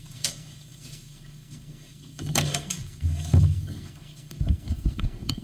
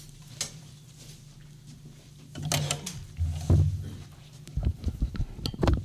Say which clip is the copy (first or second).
first